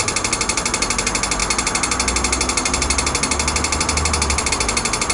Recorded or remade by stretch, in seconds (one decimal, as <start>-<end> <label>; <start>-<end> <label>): 0.0-5.1 recorded